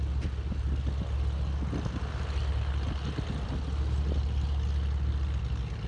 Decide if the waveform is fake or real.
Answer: real